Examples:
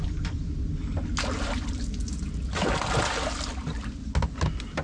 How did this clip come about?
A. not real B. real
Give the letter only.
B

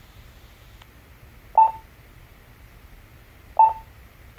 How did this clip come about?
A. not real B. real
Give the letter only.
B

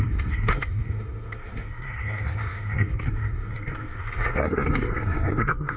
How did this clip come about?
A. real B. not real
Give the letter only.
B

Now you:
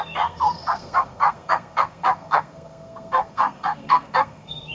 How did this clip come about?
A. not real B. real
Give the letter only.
A